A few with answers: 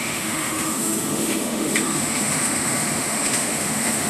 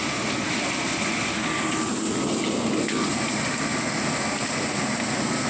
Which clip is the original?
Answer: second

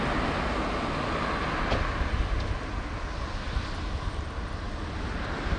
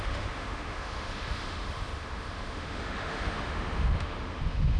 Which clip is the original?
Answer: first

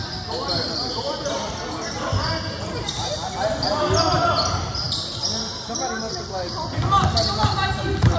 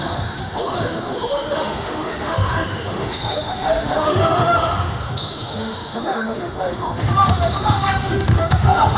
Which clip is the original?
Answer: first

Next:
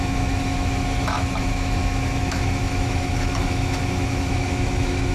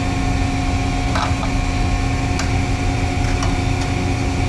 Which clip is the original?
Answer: second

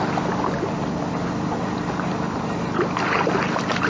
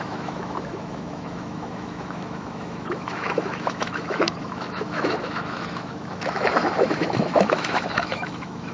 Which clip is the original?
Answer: first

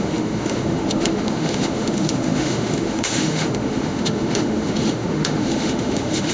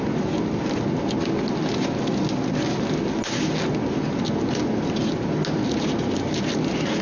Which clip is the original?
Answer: second